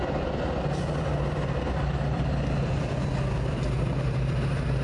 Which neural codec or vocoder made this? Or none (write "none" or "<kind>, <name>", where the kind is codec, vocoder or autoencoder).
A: vocoder, BigVGAN v2